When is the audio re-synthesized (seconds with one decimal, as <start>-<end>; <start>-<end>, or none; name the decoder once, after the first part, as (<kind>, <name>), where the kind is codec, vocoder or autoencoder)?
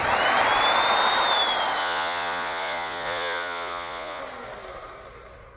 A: 1.8-4.2 (vocoder, Vocos)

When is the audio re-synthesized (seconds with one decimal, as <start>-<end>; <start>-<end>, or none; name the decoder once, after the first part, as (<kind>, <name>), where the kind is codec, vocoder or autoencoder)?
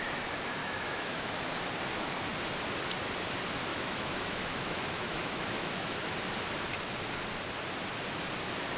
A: 0.6-1.5 (autoencoder, DAC-VAE); 3.7-6.0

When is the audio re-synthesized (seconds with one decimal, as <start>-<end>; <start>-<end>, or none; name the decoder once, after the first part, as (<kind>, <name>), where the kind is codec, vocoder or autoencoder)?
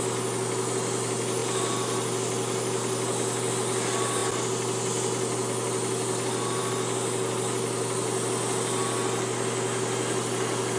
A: none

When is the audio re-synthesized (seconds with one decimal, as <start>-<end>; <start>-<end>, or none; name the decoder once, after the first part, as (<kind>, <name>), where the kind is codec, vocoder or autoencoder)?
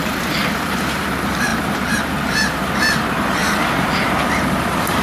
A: 0.0-5.0 (vocoder, BigVGAN v2)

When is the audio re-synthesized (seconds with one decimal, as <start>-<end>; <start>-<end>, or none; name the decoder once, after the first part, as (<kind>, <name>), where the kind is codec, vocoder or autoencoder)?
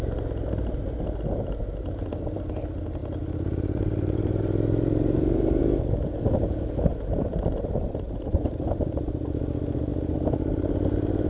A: 3.0-5.6 (vocoder, BigVGAN v2); 6.9-9.2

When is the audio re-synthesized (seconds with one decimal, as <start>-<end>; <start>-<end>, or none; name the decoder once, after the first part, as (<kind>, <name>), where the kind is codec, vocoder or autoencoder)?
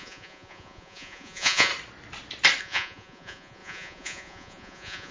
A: 0.0-1.7 (vocoder, Vocos); 2.6-5.1